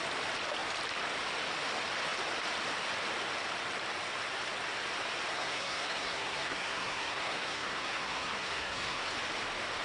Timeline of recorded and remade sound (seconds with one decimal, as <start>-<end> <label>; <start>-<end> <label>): 0.0-5.3 recorded; 5.3-9.1 remade; 9.1-9.8 recorded